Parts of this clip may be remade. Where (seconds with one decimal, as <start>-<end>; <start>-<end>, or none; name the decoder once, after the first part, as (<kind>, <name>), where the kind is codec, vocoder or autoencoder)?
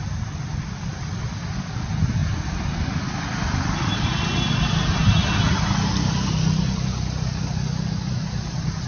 none